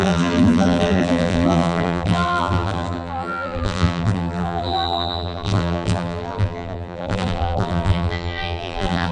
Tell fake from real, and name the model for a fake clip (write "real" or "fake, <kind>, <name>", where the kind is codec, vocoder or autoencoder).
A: fake, vocoder, BigVGAN v2